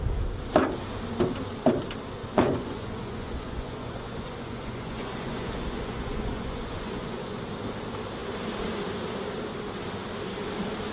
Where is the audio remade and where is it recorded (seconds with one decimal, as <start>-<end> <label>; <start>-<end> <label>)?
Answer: 0.0-2.2 recorded; 2.2-7.4 remade; 7.4-10.9 recorded